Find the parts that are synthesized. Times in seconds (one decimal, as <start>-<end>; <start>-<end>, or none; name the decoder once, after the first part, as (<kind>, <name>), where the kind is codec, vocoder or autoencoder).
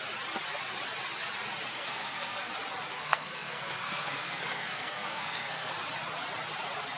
1.7-2.5 (codec, SNAC); 2.9-5.7